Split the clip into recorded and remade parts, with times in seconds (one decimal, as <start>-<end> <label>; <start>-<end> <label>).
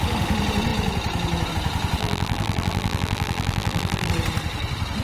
0.0-2.0 recorded; 2.0-4.1 remade; 4.1-5.0 recorded